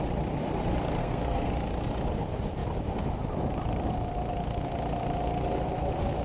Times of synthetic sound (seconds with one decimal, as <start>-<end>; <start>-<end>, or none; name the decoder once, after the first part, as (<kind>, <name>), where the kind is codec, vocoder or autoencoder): 1.0-1.5 (codec, SNAC)